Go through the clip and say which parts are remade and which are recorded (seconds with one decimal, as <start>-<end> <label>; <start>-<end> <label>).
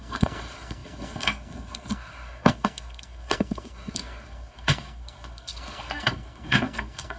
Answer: 0.0-7.2 remade